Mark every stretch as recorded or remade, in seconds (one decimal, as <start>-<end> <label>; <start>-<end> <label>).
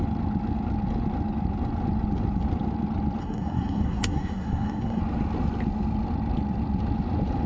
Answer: 0.0-3.2 recorded; 3.2-5.0 remade; 5.0-7.5 recorded